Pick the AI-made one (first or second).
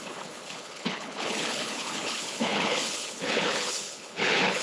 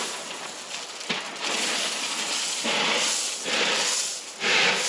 first